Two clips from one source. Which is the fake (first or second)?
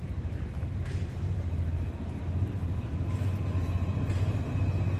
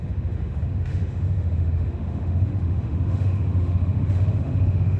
second